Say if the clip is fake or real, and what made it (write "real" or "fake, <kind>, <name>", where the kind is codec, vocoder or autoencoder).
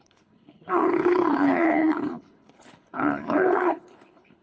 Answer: fake, codec, HILCodec